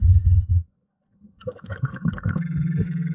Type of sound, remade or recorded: remade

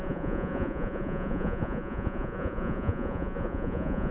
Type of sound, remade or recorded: remade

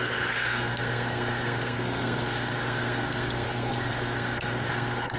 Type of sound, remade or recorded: remade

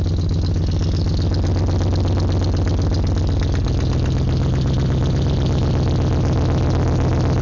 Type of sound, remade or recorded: recorded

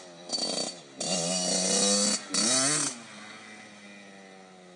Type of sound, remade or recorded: recorded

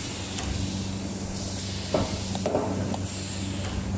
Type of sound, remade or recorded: recorded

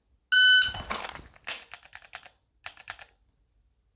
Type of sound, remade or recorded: recorded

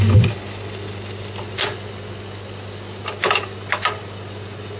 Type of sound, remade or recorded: recorded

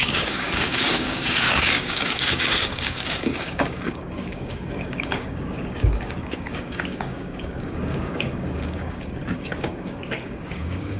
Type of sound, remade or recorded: remade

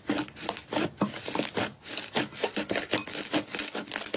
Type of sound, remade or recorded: recorded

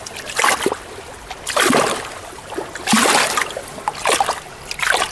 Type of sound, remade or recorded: recorded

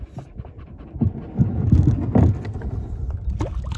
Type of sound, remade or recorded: recorded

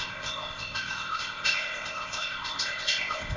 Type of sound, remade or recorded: remade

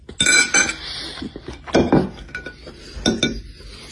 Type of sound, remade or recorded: recorded